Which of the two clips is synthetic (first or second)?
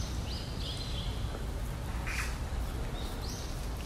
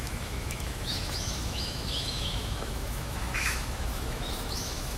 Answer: second